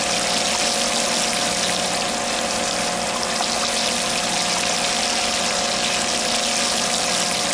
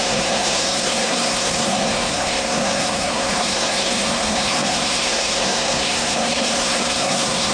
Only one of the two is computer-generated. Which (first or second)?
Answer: second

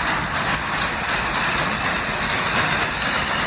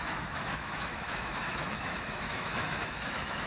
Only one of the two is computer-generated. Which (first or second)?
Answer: second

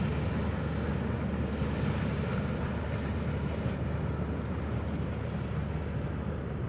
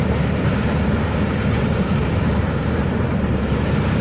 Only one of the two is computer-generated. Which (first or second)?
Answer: second